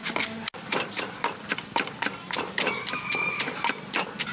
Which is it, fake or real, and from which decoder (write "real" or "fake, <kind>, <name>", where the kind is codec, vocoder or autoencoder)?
real